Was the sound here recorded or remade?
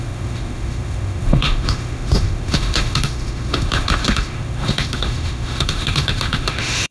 remade